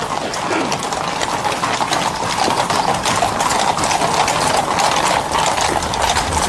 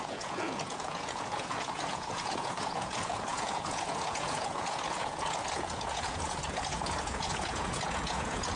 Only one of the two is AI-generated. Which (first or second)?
second